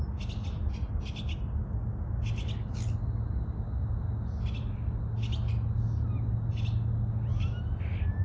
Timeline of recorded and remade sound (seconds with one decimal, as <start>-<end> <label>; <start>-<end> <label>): 0.0-8.2 recorded